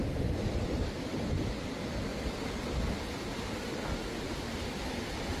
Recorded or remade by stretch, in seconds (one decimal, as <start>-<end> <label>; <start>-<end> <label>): 0.0-1.6 recorded; 1.6-2.1 remade; 2.1-5.4 recorded

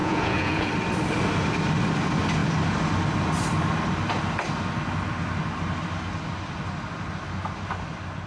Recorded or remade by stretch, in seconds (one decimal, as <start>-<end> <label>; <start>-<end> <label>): 0.0-0.7 remade; 0.7-8.3 recorded

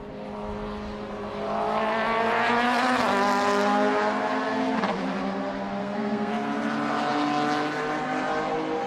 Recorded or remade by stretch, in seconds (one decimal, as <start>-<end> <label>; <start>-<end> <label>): 0.0-5.8 recorded; 5.8-6.3 remade; 6.3-8.9 recorded

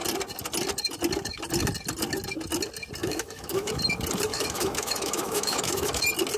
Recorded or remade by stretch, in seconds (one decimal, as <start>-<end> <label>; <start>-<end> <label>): 0.0-3.0 recorded; 3.0-3.7 remade; 3.7-4.3 recorded; 4.3-6.0 remade; 6.0-6.4 recorded